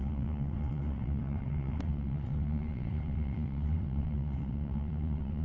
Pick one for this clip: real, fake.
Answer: fake